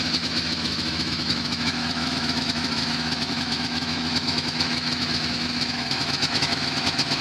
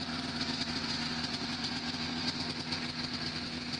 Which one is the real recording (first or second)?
second